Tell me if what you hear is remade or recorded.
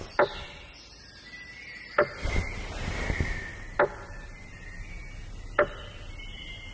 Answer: recorded